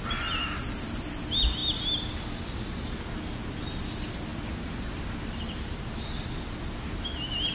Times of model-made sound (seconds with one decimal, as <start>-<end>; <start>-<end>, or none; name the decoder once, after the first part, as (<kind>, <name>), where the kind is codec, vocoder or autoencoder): none

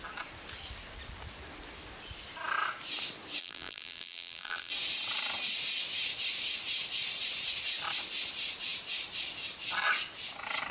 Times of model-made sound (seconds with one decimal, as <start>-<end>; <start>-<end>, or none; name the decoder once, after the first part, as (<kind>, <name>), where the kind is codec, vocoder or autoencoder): 3.4-4.7 (vocoder, BigVGAN v2)